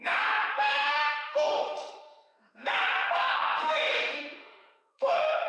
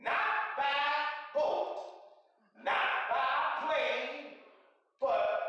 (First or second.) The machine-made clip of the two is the first